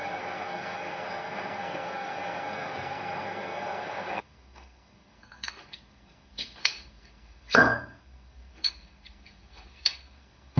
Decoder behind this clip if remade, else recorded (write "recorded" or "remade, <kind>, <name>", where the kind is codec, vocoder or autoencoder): remade, codec, SNAC